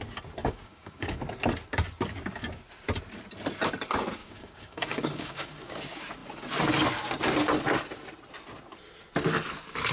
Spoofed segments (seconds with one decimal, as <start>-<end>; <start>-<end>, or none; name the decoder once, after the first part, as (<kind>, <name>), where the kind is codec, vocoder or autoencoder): 0.4-1.2 (codec, DAC); 4.2-5.8